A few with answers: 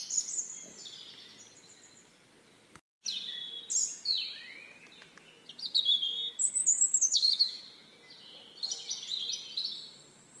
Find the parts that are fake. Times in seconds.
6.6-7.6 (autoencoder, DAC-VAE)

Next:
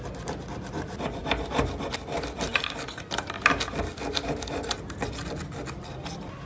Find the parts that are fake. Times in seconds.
none

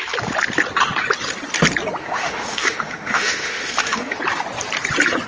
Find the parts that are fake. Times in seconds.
2.0-4.2 (autoencoder, DAC-VAE)

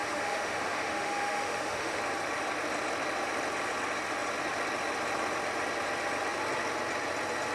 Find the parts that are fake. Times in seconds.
0.0-2.0 (autoencoder, DAC-VAE)

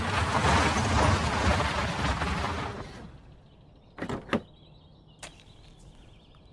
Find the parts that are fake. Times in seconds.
none

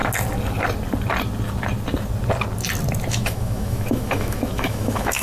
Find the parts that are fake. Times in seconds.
3.1-5.2 (autoencoder, DAC-VAE)

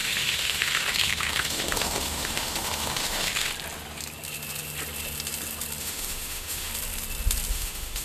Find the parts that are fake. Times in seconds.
0.0-3.5 (autoencoder, DAC-VAE); 5.8-6.7; 7.5-8.0